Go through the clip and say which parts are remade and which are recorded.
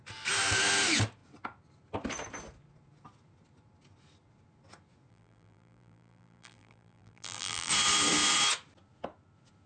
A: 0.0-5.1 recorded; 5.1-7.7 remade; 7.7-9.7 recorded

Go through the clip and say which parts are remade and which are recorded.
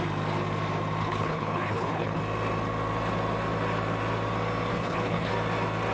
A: 0.0-1.0 recorded; 1.0-2.2 remade; 2.2-4.7 recorded; 4.7-5.3 remade; 5.3-5.9 recorded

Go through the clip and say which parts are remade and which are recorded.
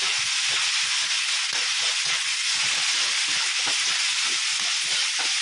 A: 0.0-1.6 recorded; 1.6-2.7 remade; 2.7-5.4 recorded